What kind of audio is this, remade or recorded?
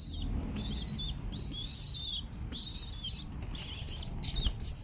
recorded